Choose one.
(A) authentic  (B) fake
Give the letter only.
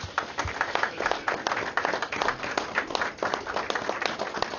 A